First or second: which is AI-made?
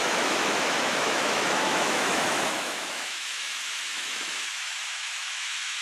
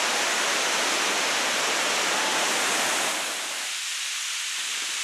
first